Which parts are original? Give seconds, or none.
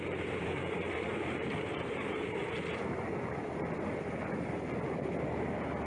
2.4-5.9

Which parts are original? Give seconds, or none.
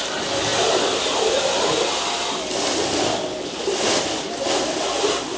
0.0-5.4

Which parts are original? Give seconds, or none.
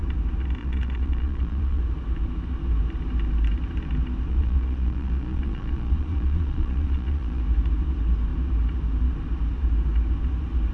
0.0-0.6; 1.8-4.3; 7.4-10.7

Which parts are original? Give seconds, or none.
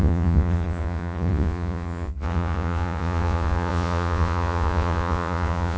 none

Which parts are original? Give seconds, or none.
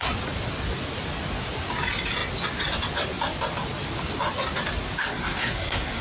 0.0-5.0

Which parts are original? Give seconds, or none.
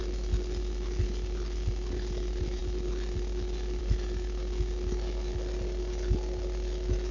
0.0-7.1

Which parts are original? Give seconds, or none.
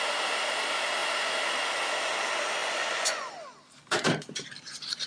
0.0-2.6; 3.3-5.1